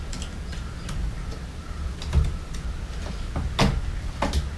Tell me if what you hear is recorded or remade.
recorded